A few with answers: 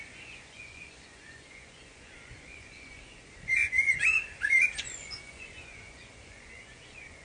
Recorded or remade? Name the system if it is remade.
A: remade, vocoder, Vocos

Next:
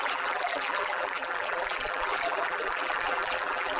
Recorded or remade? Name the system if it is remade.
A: remade, vocoder, BigVGAN v2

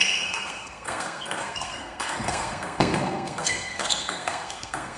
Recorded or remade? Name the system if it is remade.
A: remade, codec, SNAC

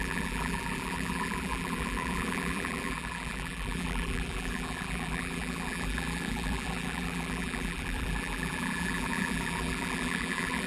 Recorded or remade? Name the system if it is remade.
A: remade, vocoder, BigVGAN v2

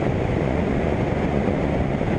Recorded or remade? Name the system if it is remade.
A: remade, vocoder, Vocos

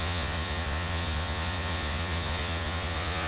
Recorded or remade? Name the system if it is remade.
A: remade, vocoder, Vocos